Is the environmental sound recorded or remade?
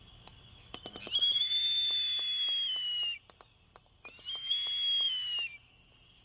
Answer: recorded